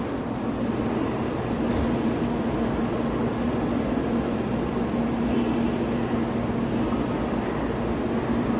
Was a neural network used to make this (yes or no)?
no